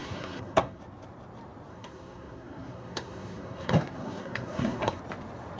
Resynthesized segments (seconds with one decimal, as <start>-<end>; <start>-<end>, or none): 0.0-0.8; 1.7-5.0

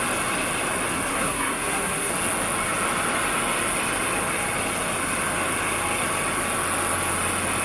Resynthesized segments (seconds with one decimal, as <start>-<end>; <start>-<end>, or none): 1.1-2.1

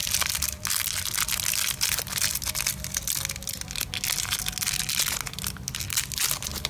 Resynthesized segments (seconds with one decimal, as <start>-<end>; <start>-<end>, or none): none

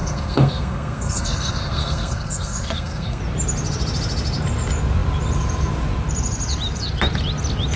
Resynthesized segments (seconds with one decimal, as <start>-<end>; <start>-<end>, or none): 0.0-3.2

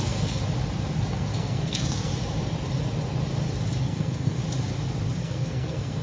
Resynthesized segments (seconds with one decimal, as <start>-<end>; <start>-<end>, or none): 0.0-0.4; 1.1-2.1; 3.8-4.4; 5.2-6.0

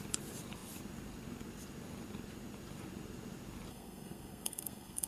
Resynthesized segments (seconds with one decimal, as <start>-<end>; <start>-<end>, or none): 3.7-5.1